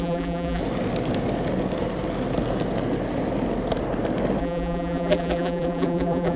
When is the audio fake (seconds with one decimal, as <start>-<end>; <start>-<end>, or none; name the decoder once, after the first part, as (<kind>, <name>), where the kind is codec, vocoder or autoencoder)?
0.0-0.6 (vocoder, BigVGAN v2); 4.4-6.4

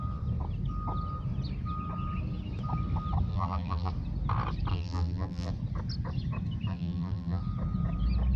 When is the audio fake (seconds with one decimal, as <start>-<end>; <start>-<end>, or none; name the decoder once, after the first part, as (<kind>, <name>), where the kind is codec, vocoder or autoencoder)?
3.3-3.9 (vocoder, BigVGAN v2); 4.7-5.5; 6.7-7.4

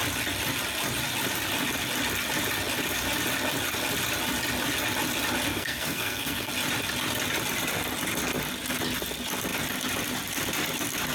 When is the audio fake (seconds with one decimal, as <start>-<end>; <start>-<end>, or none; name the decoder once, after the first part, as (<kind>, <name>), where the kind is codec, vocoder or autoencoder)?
5.5-6.5 (codec, SNAC)

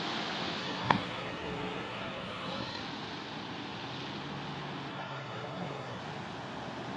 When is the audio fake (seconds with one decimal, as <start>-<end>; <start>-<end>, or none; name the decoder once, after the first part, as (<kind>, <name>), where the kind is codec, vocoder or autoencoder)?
0.6-2.8 (codec, SNAC); 4.9-6.0